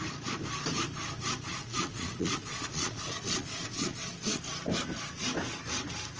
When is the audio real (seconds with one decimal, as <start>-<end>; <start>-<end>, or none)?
0.0-1.5; 4.4-6.2